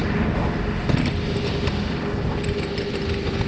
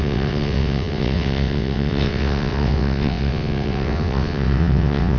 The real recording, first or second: first